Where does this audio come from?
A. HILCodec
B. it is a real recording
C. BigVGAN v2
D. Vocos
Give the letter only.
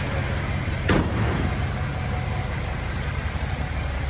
C